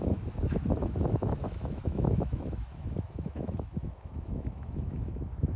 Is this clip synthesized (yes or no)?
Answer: yes